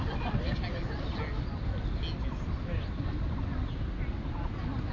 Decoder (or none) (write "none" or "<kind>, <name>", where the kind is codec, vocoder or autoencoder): none